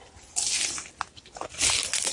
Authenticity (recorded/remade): recorded